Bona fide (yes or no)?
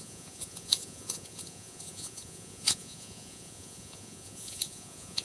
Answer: no